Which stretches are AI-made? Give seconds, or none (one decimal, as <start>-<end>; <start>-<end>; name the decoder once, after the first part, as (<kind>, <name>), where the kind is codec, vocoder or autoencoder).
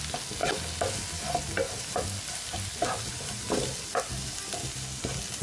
none